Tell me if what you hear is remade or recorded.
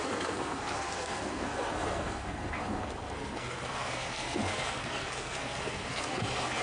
remade